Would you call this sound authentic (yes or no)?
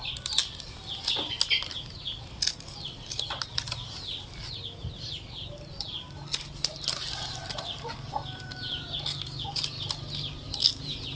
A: yes